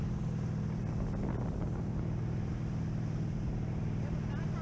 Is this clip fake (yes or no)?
no